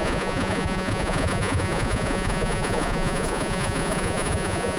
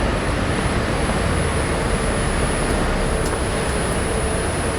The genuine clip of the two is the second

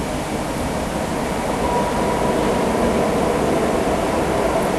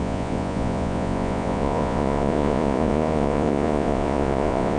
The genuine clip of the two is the first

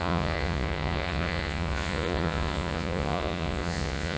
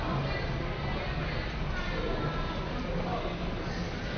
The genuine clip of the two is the second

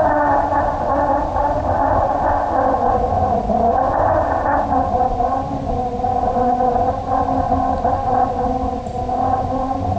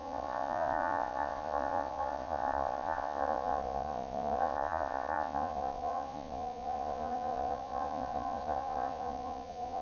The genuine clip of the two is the first